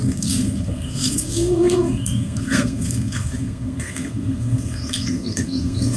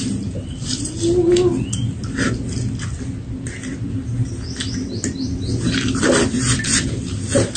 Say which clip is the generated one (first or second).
first